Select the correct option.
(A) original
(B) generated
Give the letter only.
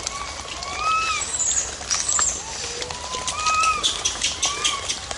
A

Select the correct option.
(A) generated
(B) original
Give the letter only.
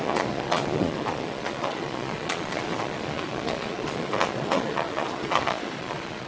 A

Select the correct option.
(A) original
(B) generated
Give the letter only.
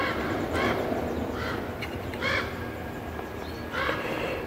A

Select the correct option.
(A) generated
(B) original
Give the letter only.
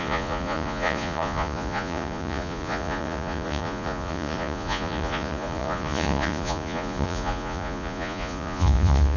A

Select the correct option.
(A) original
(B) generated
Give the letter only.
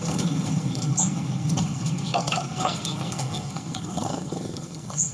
B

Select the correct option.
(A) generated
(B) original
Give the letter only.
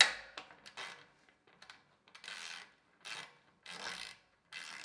B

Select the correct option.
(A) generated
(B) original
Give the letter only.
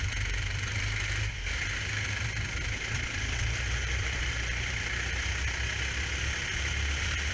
A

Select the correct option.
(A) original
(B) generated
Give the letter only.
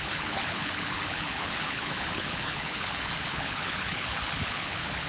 B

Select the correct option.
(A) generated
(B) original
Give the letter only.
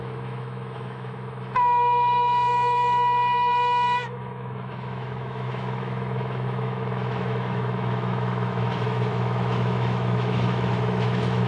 A